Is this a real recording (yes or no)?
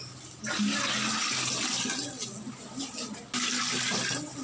yes